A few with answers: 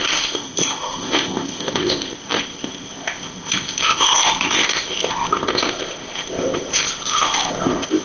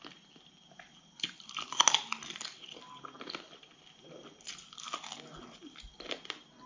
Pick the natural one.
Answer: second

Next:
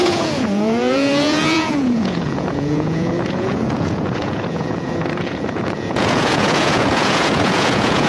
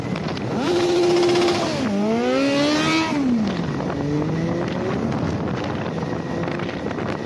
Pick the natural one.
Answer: second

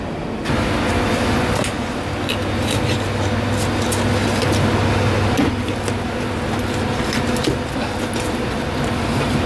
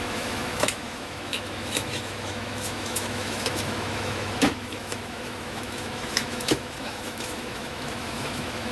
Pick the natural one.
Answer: first